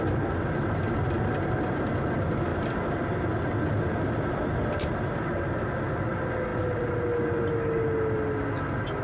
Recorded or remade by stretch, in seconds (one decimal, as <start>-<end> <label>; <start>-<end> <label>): 0.0-9.0 recorded